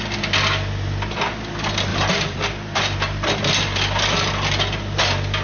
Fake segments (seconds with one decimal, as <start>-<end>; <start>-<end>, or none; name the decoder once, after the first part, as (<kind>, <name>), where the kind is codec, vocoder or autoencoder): 1.9-3.4 (vocoder, BigVGAN v2)